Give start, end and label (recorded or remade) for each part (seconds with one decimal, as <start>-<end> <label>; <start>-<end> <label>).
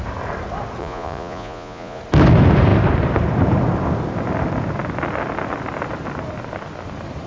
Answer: 0.0-0.8 recorded; 0.8-2.0 remade; 2.0-7.3 recorded